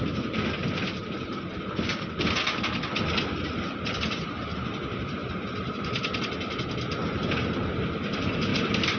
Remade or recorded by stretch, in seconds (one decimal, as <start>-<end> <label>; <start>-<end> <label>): 0.0-5.2 recorded; 5.2-5.8 remade; 5.8-9.0 recorded